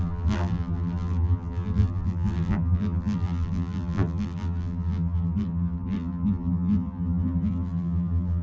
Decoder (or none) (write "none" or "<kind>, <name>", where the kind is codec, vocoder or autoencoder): vocoder, BigVGAN v2